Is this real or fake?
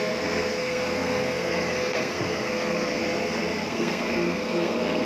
fake